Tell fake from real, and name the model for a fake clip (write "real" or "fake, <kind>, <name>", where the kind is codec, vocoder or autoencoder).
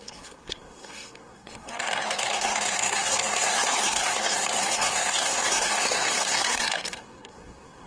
fake, codec, SNAC